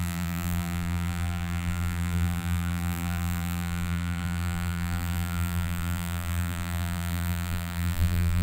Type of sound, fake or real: fake